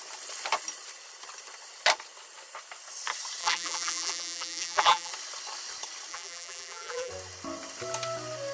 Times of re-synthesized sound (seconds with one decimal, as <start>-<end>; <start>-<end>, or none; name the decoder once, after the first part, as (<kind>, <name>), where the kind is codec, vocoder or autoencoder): 3.4-5.1 (vocoder, BigVGAN v2); 6.1-7.1